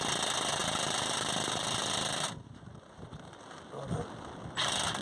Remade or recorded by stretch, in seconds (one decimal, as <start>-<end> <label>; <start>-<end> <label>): 0.0-0.6 recorded; 0.6-3.6 remade; 3.6-5.0 recorded